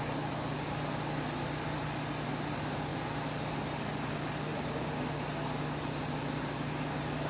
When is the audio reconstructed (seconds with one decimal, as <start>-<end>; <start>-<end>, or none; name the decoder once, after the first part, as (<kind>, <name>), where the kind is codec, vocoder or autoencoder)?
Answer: none

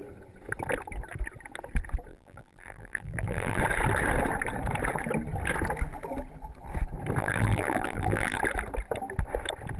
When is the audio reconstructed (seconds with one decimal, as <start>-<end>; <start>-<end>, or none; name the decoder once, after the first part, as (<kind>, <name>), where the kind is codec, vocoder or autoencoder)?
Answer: 2.1-3.6 (vocoder, BigVGAN v2); 7.2-8.4

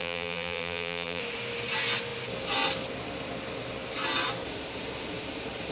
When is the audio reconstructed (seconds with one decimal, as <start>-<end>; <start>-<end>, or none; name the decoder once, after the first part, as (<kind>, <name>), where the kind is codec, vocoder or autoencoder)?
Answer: 0.0-1.2 (vocoder, BigVGAN v2)

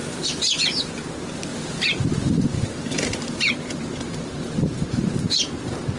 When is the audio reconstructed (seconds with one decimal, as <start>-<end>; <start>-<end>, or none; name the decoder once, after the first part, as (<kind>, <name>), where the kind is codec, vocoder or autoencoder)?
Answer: 1.5-5.1 (vocoder, BigVGAN v2)

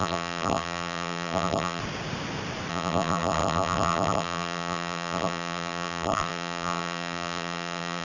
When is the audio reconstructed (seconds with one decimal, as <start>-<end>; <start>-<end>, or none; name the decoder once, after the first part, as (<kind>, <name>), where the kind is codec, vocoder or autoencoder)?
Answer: 0.0-1.8 (vocoder, BigVGAN v2); 2.7-8.0

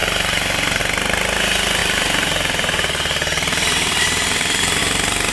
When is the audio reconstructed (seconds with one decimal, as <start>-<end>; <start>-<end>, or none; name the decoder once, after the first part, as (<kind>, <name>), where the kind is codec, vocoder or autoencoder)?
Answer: 0.0-0.8 (vocoder, BigVGAN v2); 1.8-4.8

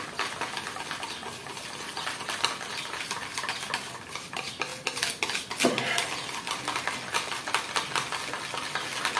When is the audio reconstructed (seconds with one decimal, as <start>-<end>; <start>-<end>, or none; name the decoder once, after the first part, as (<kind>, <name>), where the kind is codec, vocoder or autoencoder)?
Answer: none